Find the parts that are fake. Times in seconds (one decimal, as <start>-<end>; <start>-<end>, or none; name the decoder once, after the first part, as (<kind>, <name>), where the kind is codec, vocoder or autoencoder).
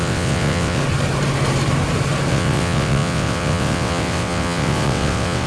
0.0-0.8 (vocoder, WaveNeXt); 2.3-5.5